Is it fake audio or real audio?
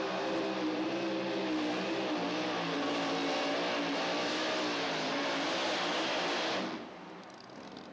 real